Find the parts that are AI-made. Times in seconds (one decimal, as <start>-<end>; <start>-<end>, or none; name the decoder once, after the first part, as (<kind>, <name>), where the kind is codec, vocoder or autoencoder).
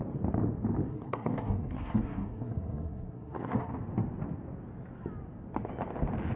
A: 0.9-3.7 (codec, SNAC)